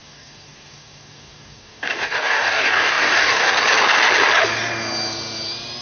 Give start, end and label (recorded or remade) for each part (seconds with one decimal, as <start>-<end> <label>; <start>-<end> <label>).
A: 0.0-3.5 remade; 3.5-5.8 recorded